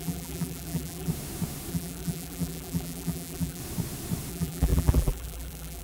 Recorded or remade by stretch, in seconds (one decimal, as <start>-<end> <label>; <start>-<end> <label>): 0.0-1.1 remade; 1.1-1.7 recorded; 1.7-3.6 remade; 3.6-4.3 recorded; 4.3-5.8 remade